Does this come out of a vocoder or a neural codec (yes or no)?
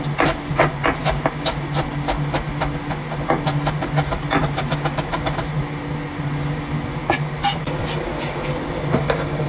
no